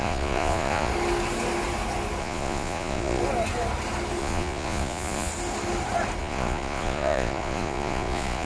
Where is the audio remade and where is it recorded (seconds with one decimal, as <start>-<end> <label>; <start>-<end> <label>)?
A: 0.0-0.9 remade; 0.9-2.2 recorded; 2.2-3.2 remade; 3.2-4.2 recorded; 4.2-5.3 remade; 5.3-6.2 recorded; 6.2-8.4 remade